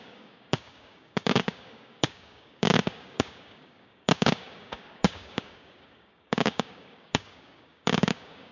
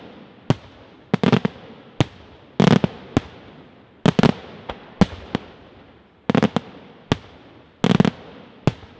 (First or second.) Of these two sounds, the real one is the second